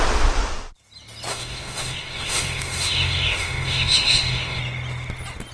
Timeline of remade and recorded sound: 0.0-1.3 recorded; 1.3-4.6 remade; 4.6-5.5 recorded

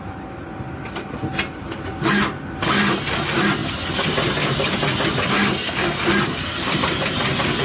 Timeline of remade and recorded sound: 0.0-7.6 recorded

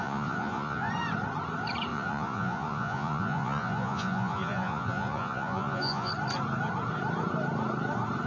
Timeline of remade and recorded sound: 0.0-0.9 remade; 0.9-1.9 recorded; 1.9-6.1 remade; 6.1-8.3 recorded

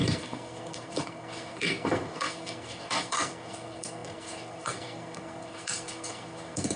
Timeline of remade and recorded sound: 0.0-6.8 remade

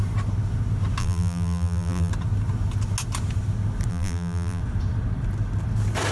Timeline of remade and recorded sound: 0.0-1.0 recorded; 1.0-2.1 remade; 2.1-3.9 recorded; 3.9-4.6 remade; 4.6-6.1 recorded